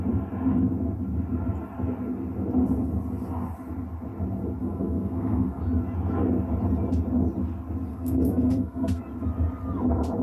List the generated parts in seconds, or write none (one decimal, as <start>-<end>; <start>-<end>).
4.6-5.6; 7.9-9.0